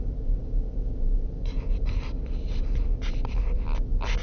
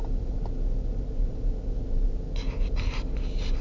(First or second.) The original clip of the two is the second